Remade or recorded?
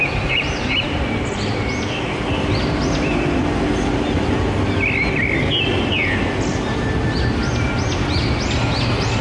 recorded